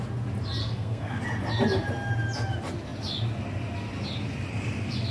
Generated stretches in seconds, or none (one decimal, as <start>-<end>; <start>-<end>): 0.6-1.2